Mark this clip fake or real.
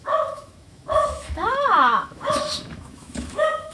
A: fake